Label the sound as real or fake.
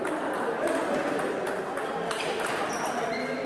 real